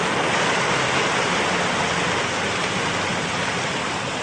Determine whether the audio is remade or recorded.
recorded